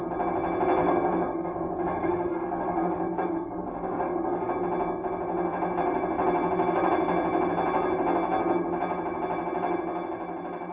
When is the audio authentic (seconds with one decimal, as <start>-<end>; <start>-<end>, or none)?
0.0-0.8; 4.5-10.7

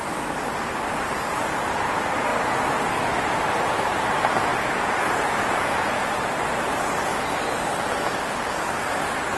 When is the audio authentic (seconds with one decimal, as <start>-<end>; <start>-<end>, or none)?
0.0-4.5; 6.2-9.4

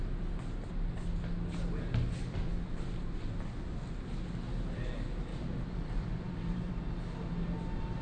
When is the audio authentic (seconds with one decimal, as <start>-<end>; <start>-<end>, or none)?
0.0-5.3; 6.7-8.0

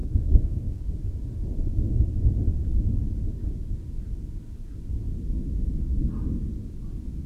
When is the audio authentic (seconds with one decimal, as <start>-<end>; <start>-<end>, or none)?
0.8-7.3

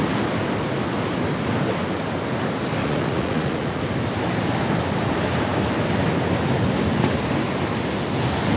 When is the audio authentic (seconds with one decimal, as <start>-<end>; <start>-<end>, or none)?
0.0-2.8; 3.8-8.6

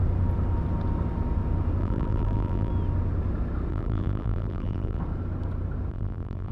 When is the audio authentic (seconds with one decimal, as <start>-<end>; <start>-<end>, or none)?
0.0-1.8; 2.7-3.7; 5.0-5.9

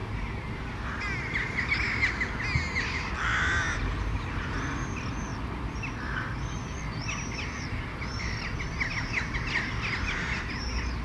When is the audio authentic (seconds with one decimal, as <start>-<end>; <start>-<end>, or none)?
0.0-11.0

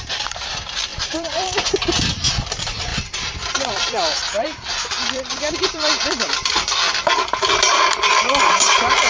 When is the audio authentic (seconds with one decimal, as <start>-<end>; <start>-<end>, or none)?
0.0-0.9; 1.7-2.9; 7.5-9.1